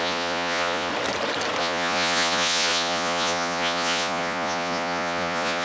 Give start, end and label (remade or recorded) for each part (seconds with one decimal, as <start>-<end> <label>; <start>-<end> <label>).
0.0-0.9 remade; 0.9-1.6 recorded; 1.6-5.6 remade